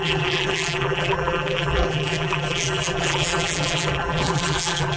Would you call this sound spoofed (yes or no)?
yes